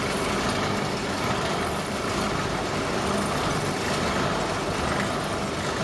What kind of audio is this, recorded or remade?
recorded